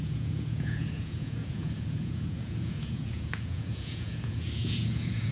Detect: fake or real fake